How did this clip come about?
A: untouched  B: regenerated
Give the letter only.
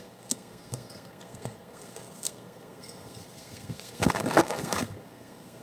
B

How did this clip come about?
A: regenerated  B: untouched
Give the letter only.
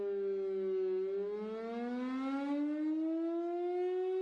B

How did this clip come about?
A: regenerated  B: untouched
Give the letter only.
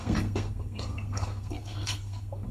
A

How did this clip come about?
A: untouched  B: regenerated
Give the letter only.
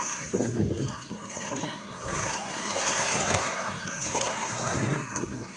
B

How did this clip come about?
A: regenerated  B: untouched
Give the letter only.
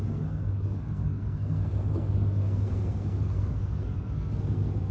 A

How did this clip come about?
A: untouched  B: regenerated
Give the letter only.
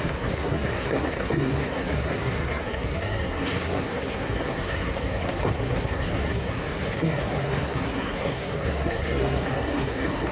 B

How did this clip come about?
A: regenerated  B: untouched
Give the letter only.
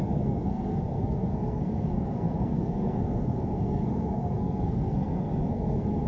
A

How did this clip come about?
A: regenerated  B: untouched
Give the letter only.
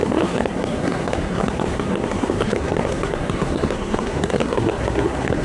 A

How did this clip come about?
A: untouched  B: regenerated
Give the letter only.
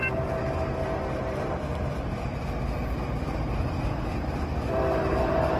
A